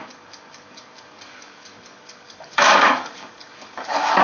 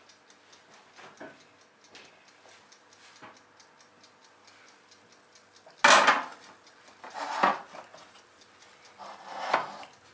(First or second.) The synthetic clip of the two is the first